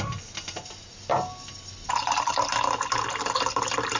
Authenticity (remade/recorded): recorded